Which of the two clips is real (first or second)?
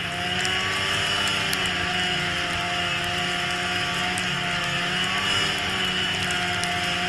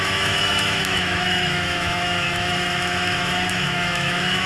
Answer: first